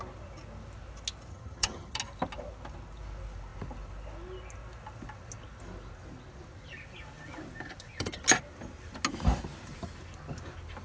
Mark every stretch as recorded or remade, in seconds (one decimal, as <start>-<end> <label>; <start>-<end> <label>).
0.0-1.3 recorded; 1.3-2.0 remade; 2.0-10.8 recorded